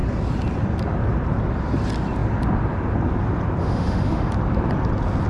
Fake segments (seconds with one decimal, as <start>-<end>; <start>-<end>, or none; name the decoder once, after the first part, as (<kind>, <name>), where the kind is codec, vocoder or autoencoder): 3.6-4.3 (autoencoder, DAC-VAE)

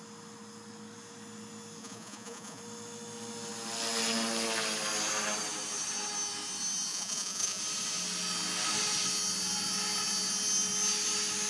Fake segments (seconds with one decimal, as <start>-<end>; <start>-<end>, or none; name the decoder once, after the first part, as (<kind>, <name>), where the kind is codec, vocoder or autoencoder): 1.8-2.6 (vocoder, Vocos); 6.9-7.6

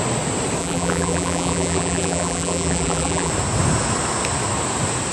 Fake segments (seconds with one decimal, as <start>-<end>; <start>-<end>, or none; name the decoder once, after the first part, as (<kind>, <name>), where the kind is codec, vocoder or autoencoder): 0.6-3.3 (vocoder, BigVGAN v2)

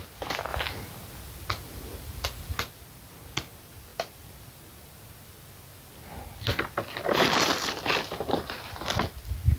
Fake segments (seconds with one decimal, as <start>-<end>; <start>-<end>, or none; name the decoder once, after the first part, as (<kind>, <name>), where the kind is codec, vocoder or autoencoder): none

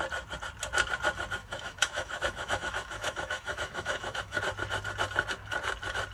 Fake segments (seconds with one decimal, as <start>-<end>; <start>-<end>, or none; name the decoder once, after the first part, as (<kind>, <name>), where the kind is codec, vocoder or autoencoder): 1.4-4.4 (autoencoder, DAC-VAE)

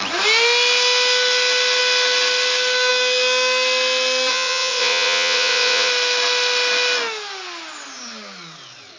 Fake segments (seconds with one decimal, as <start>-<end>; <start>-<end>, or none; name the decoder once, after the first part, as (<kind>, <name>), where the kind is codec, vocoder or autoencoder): 4.3-5.9 (vocoder, WaveNeXt)

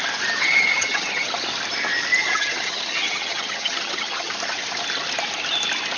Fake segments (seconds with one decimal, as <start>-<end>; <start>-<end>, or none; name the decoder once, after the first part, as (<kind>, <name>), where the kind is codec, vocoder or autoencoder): 0.4-1.3 (vocoder, HiFi-GAN); 2.2-4.3

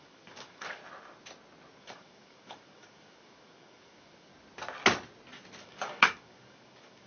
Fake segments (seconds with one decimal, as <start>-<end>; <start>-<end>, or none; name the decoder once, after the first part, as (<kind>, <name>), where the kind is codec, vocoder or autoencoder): 0.0-0.8 (codec, DAC); 1.8-4.3; 5.6-7.1